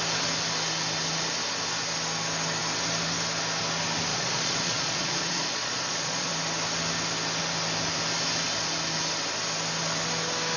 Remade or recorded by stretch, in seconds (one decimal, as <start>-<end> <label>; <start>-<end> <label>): 0.0-4.1 recorded; 4.1-6.3 remade; 6.3-10.6 recorded